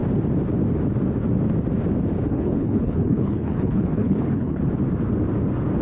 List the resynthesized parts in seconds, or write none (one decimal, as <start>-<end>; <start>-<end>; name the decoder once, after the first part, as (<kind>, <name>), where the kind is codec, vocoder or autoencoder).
2.3-4.6 (codec, HILCodec)